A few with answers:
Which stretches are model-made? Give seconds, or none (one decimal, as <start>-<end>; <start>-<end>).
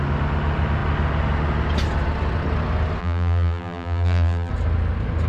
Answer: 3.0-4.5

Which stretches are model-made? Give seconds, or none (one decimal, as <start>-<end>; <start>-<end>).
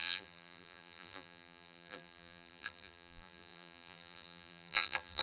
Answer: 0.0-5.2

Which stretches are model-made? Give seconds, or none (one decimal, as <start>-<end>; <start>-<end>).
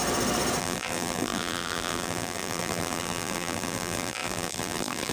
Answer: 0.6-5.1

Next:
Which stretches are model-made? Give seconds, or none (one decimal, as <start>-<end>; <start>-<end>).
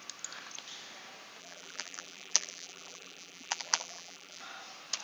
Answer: 1.4-4.4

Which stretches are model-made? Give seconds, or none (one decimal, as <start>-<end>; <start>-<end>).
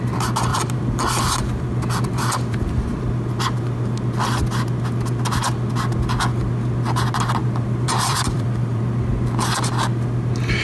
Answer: 0.5-2.7; 7.4-8.8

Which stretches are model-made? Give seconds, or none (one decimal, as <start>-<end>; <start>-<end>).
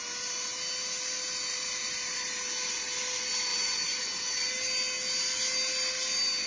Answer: 1.5-2.8; 3.5-4.0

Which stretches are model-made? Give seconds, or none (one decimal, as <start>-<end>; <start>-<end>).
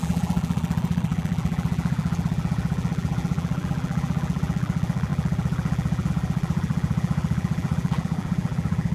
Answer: 0.0-8.9